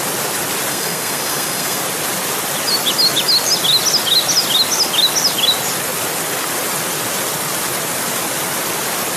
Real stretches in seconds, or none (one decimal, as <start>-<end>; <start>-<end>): 0.0-0.7; 1.8-9.2